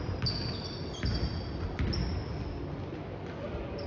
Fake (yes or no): no